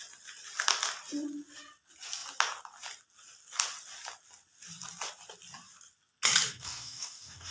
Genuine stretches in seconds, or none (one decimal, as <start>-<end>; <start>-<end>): 0.0-6.5